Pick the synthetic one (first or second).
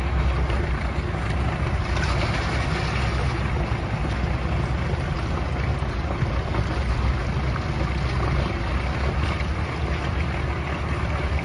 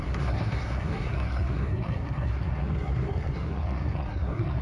second